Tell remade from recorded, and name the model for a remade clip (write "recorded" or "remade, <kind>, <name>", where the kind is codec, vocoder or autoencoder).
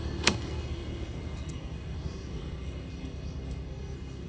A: remade, codec, SNAC